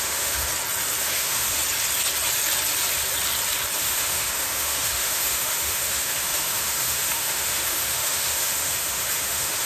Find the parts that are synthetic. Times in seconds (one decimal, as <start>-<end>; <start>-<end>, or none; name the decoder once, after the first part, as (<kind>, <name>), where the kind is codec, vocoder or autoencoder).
0.0-0.5 (autoencoder, DAC-VAE); 1.0-1.6; 3.8-9.7